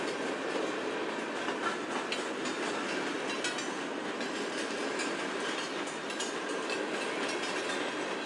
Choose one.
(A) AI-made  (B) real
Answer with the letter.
B